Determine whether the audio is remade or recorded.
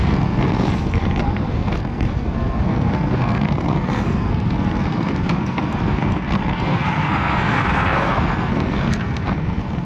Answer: remade